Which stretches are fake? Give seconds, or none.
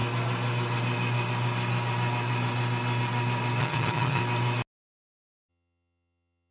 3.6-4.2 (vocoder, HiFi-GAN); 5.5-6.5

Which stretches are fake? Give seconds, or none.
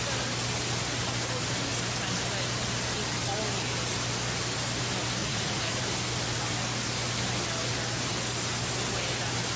5.2-5.8 (vocoder, Vocos)